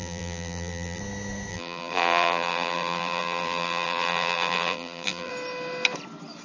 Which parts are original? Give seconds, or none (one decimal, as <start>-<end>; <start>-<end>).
1.0-1.5; 5.3-6.4